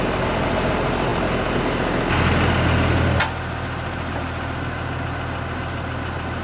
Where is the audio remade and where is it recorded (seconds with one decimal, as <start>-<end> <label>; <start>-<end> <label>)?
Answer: 0.0-6.4 recorded